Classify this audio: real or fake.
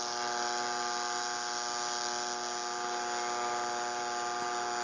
real